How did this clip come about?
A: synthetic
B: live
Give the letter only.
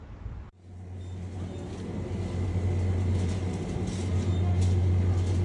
B